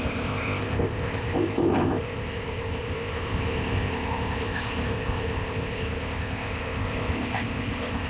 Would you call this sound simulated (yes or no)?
yes